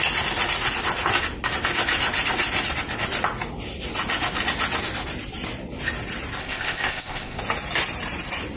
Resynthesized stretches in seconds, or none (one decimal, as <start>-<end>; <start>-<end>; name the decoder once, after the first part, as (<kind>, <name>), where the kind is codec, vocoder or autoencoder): 6.4-7.4 (codec, ZipCodec)

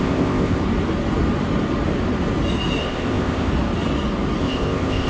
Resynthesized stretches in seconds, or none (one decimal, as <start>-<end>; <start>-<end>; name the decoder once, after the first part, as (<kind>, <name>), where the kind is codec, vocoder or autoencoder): 0.0-0.6 (codec, ZipCodec); 2.8-3.5; 4.4-5.1

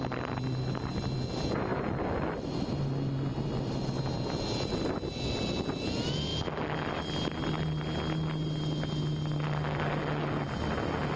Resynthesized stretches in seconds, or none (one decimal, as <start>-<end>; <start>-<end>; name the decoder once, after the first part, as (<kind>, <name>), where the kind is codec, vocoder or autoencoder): none

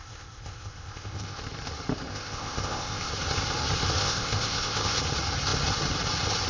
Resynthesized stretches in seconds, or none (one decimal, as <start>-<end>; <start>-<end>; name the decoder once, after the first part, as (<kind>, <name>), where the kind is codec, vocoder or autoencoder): 0.0-1.4 (codec, ZipCodec); 2.1-3.1; 4.0-5.0

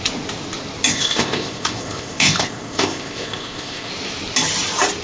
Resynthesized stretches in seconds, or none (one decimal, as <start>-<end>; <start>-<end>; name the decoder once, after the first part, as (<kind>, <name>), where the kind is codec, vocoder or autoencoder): 0.9-3.9 (codec, ZipCodec)

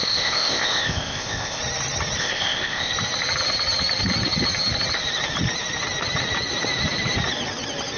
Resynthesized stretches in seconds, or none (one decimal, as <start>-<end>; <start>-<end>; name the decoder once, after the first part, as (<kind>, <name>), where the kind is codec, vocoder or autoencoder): 0.0-1.6 (codec, ZipCodec); 2.2-2.9

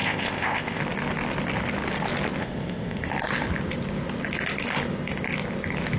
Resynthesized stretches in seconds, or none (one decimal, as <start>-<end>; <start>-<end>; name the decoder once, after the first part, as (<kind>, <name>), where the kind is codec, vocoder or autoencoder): 0.0-0.8 (codec, ZipCodec); 2.4-3.1

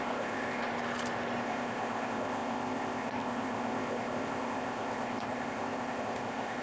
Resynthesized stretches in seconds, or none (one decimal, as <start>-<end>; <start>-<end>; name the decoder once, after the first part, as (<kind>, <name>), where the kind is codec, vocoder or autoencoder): 0.0-0.7 (codec, ZipCodec); 1.4-6.6